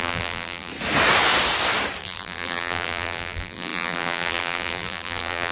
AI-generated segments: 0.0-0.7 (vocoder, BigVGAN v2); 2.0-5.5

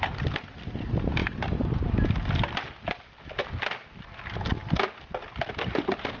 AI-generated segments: 1.2-1.9 (vocoder, BigVGAN v2)

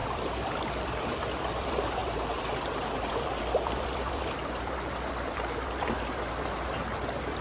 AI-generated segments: 0.0-7.4 (vocoder, BigVGAN v2)

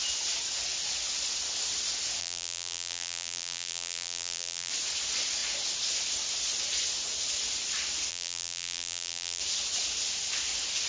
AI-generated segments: 2.2-4.7 (vocoder, BigVGAN v2); 8.1-9.4

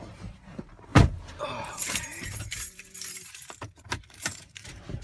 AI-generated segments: 0.0-5.0 (vocoder, BigVGAN v2)

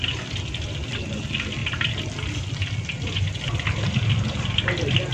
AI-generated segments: none

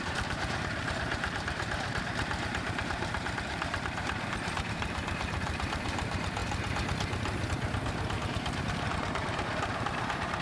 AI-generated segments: 0.0-6.4 (vocoder, BigVGAN v2); 8.7-10.4

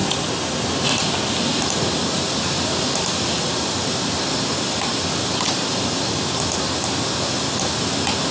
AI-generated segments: 2.0-5.7 (vocoder, BigVGAN v2)